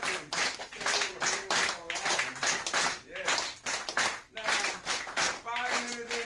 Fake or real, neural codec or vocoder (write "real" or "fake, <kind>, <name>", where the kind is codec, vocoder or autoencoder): real